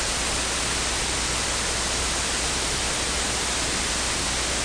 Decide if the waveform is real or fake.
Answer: real